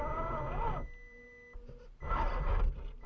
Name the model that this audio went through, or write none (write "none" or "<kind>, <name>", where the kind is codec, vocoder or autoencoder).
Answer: none